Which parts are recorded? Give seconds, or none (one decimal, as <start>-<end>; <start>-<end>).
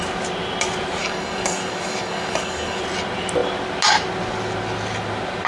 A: 0.0-1.0; 2.8-5.5